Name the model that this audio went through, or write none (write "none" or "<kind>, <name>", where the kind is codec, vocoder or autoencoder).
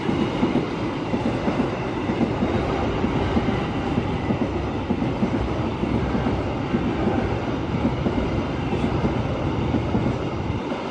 none